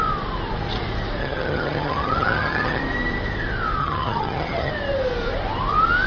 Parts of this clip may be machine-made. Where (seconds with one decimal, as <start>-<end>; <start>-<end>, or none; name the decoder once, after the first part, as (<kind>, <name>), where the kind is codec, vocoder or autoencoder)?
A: 1.2-2.8 (vocoder, HiFi-GAN); 3.8-4.7